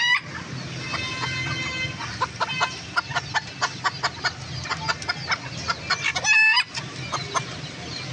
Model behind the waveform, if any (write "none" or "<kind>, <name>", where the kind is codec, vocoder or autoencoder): none